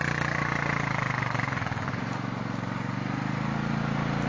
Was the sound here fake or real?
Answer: real